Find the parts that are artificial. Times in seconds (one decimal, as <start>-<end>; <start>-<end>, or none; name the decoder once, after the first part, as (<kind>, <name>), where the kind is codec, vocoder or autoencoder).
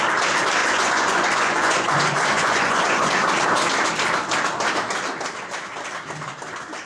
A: 0.6-3.1 (vocoder, Vocos)